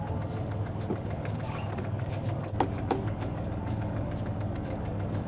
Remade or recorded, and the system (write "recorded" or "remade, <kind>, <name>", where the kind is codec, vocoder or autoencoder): remade, codec, DAC